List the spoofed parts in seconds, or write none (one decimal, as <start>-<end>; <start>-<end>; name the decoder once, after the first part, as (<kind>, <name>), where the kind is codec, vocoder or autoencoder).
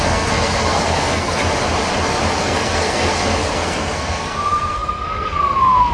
0.0-1.4 (codec, SNAC); 2.4-5.9